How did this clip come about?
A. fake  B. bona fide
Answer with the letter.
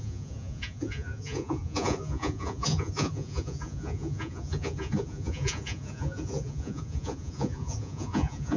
A